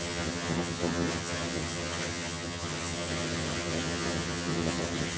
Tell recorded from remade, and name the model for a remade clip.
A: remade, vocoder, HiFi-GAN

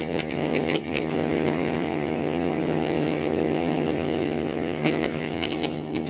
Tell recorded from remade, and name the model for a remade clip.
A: remade, vocoder, HiFi-GAN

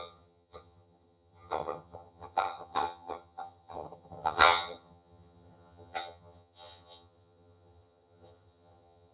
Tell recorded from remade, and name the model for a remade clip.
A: remade, vocoder, HiFi-GAN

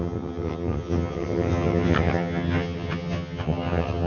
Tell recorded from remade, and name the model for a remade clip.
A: remade, vocoder, HiFi-GAN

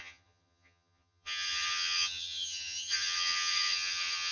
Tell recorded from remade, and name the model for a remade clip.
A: remade, vocoder, HiFi-GAN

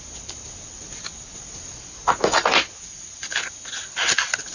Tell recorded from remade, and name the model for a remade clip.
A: recorded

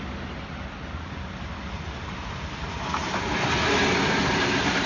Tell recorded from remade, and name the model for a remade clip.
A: recorded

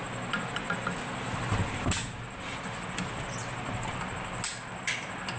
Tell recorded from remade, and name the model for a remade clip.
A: recorded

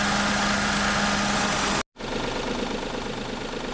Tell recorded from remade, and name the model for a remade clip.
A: recorded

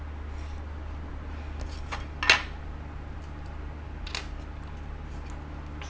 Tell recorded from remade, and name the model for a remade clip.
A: recorded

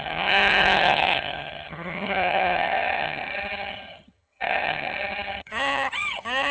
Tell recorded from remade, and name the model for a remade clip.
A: remade, vocoder, HiFi-GAN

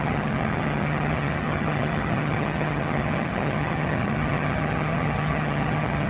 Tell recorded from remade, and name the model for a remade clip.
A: remade, vocoder, HiFi-GAN